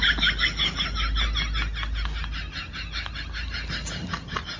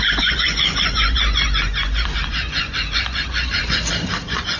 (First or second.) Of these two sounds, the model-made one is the second